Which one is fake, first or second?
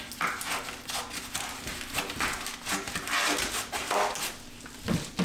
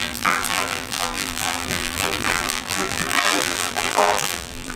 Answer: second